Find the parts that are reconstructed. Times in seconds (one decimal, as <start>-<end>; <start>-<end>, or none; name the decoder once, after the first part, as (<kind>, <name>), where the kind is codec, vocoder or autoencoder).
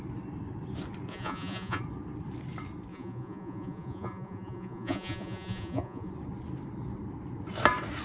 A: 1.1-1.8 (vocoder, Vocos); 2.9-6.1